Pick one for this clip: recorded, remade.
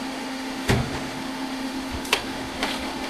remade